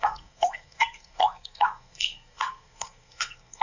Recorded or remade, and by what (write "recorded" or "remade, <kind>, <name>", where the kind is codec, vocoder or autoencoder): remade, codec, SNAC